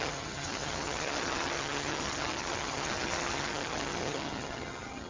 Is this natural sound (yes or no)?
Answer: no